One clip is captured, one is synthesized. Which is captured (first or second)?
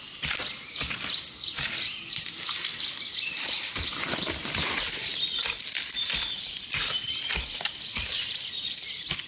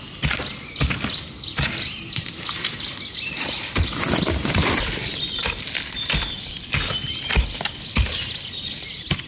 second